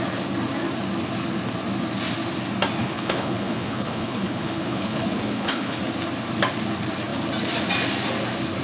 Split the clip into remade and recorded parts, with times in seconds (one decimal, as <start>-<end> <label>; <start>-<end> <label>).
0.0-2.8 recorded; 2.8-5.8 remade; 5.8-8.6 recorded